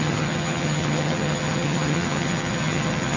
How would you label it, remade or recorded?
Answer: remade